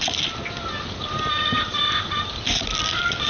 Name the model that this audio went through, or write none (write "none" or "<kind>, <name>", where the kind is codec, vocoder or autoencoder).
none